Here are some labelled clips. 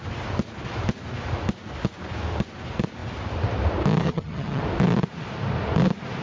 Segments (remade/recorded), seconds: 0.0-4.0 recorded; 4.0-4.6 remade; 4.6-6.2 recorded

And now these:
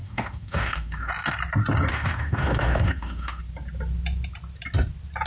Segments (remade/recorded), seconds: 0.0-1.1 remade; 1.1-1.9 recorded; 1.9-3.4 remade; 3.4-5.3 recorded

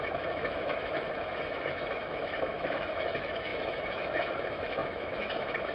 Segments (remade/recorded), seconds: 0.0-5.7 remade

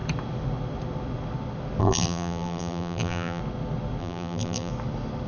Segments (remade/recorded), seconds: 0.0-1.8 recorded; 1.8-3.4 remade; 3.4-4.0 recorded; 4.0-4.7 remade; 4.7-5.3 recorded